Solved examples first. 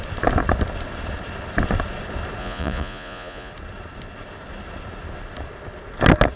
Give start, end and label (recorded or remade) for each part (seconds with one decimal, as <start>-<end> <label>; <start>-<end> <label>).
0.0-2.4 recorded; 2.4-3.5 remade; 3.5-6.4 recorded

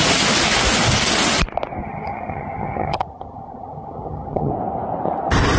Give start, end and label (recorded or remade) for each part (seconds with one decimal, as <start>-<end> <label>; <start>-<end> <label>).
0.0-1.8 recorded; 1.8-4.5 remade; 4.5-5.6 recorded

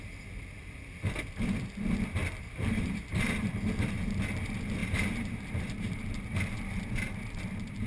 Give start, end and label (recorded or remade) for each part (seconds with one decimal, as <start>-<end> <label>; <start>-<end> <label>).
0.0-2.2 recorded; 2.2-3.5 remade; 3.5-4.8 recorded; 4.8-6.1 remade; 6.1-7.9 recorded